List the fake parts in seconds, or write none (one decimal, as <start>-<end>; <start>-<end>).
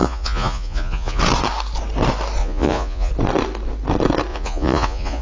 0.0-1.2; 2.4-3.1; 4.3-5.2